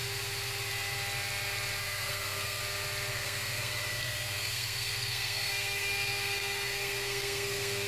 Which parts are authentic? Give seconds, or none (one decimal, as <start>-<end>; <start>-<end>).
0.0-1.8; 2.6-3.1